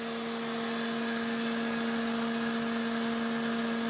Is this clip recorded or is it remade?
recorded